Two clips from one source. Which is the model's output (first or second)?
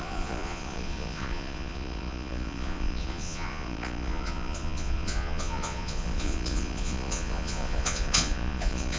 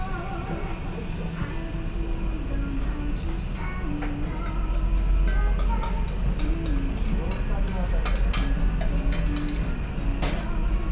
first